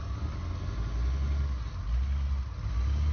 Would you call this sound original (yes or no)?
yes